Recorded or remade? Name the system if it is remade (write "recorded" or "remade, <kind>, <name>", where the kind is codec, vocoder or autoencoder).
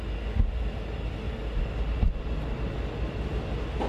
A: recorded